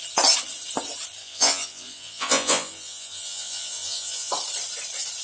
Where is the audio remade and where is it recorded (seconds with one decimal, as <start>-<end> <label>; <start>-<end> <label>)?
0.0-1.2 recorded; 1.2-4.3 remade; 4.3-5.2 recorded